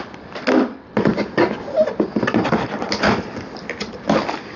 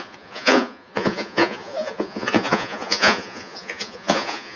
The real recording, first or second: first